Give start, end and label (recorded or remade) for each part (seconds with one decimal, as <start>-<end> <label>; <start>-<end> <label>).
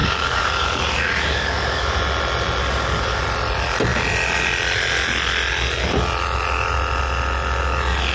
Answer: 0.0-2.0 remade; 2.0-2.6 recorded; 2.6-3.2 remade; 3.2-8.1 recorded